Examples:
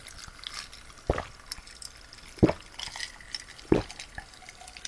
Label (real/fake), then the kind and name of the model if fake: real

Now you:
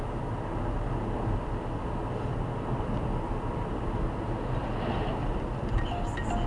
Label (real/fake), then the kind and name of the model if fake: real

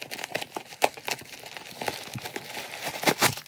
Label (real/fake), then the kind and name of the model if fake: real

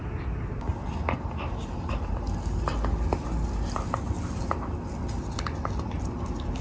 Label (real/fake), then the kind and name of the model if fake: real